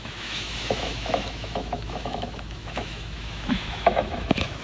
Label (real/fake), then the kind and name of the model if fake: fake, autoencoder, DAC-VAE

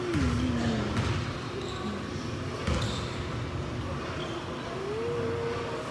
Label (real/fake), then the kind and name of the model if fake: real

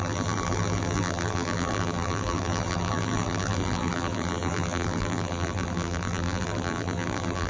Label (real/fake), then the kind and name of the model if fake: fake, vocoder, BigVGAN v2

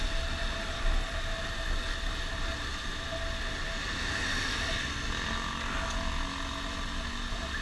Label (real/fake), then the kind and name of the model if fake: real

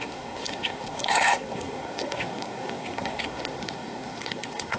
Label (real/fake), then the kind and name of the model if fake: fake, codec, SNAC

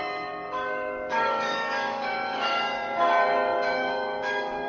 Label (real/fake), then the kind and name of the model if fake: fake, codec, DAC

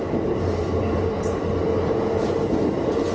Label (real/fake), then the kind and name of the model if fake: real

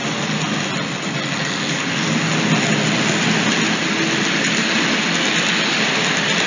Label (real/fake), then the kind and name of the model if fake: real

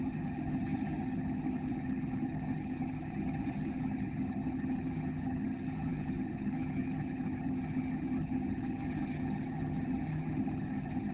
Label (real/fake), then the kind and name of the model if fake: fake, vocoder, HiFi-GAN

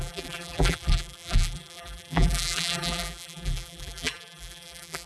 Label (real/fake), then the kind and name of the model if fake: fake, vocoder, BigVGAN v2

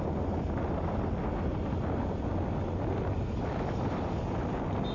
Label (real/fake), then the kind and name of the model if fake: real